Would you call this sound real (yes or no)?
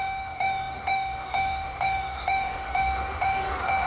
no